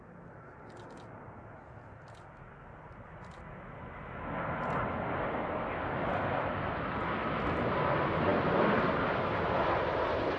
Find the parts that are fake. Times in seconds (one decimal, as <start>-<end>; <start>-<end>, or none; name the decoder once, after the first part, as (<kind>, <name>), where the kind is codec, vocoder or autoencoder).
none